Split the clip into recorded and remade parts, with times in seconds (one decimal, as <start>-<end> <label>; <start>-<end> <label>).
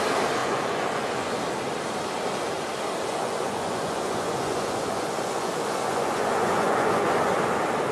0.0-0.4 recorded; 0.4-1.4 remade; 1.4-3.1 recorded; 3.1-7.3 remade; 7.3-7.9 recorded